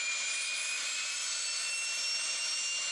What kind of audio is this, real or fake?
real